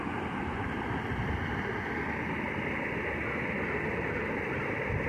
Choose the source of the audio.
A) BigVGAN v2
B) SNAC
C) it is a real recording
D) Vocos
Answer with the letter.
C